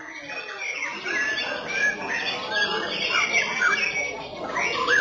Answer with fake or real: real